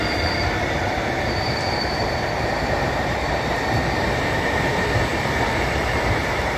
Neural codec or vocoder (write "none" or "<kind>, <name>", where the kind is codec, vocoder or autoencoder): vocoder, BigVGAN v2